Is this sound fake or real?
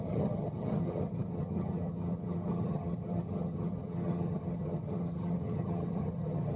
fake